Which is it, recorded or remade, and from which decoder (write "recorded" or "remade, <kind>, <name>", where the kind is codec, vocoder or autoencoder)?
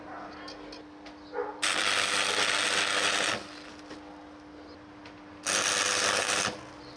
recorded